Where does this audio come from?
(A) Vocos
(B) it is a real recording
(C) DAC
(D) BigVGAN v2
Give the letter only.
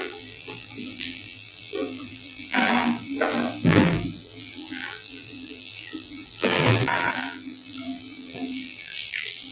D